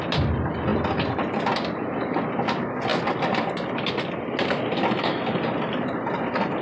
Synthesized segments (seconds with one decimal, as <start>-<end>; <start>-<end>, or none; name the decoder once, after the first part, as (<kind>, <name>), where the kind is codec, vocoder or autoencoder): none